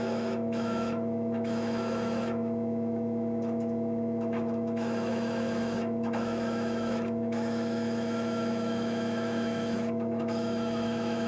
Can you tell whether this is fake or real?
fake